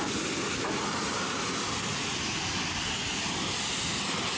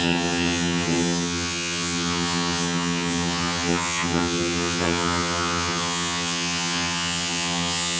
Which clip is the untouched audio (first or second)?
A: first